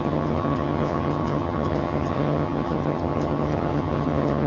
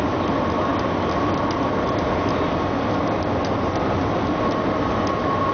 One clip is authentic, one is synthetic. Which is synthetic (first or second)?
first